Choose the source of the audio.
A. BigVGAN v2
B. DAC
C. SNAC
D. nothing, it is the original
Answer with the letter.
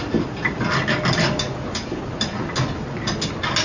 D